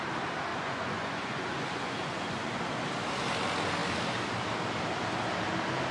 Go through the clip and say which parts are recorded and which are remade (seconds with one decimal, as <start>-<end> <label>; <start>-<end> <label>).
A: 0.0-0.5 recorded; 0.5-2.6 remade; 2.6-5.9 recorded

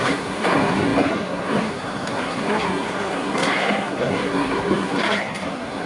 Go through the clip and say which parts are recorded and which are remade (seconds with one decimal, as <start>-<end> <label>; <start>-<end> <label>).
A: 0.0-5.9 remade

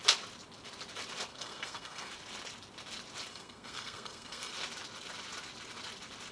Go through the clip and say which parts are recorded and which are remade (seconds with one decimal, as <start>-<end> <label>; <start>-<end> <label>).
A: 0.0-1.3 recorded; 1.3-2.1 remade; 2.1-3.3 recorded; 3.3-4.5 remade; 4.5-6.3 recorded